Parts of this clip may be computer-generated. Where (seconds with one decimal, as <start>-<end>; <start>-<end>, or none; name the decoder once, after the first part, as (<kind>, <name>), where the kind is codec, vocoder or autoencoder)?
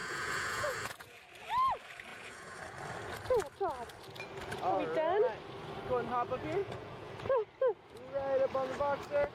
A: 0.0-1.2 (vocoder, Vocos); 2.1-2.6; 6.6-7.2